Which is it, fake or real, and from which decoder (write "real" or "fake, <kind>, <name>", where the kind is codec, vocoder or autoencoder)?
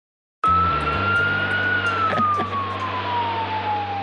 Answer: real